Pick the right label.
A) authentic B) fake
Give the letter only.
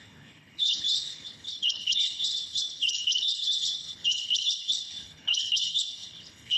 B